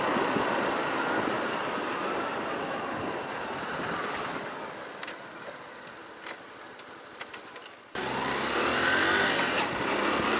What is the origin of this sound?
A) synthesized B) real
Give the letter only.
B